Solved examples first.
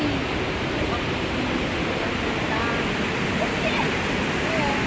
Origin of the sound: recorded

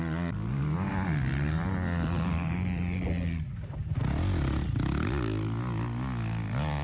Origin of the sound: recorded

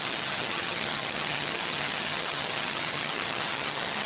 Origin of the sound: remade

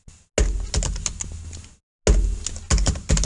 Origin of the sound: recorded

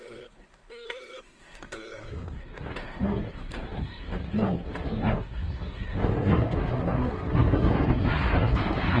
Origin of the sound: remade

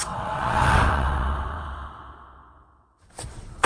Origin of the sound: remade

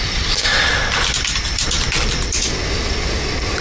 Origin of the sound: recorded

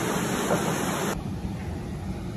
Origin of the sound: recorded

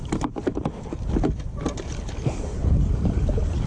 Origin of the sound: recorded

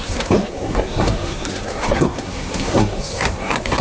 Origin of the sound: remade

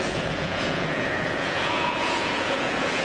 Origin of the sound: remade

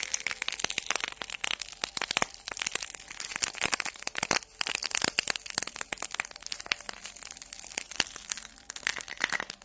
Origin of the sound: remade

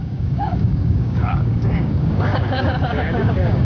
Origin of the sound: remade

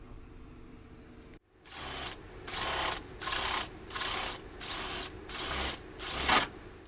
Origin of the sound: recorded